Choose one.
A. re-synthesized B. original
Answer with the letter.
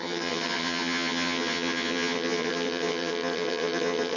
A